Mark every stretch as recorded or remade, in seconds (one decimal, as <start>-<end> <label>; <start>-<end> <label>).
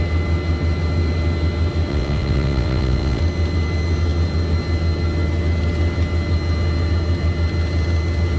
0.0-1.9 recorded; 1.9-3.2 remade; 3.2-8.4 recorded